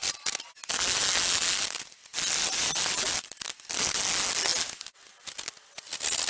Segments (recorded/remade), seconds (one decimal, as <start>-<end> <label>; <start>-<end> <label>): 0.0-0.5 remade; 0.5-2.1 recorded; 2.1-4.0 remade; 4.0-6.3 recorded